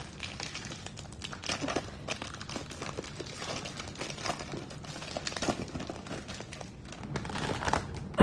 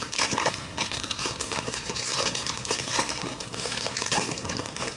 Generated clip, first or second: second